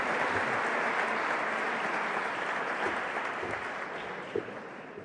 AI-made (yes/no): no